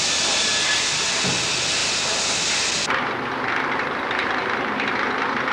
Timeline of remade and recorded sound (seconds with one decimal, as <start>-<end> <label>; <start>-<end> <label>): 0.0-5.5 recorded